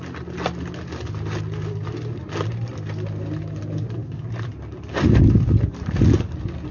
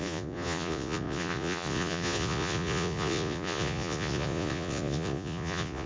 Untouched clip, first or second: first